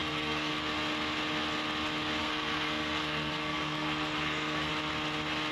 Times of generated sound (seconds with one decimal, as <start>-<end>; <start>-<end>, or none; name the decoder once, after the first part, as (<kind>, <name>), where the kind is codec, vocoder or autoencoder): 0.0-0.5 (codec, SNAC); 2.2-4.7